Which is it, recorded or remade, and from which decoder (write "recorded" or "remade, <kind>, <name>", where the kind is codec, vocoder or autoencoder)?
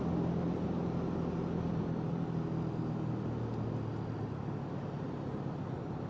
recorded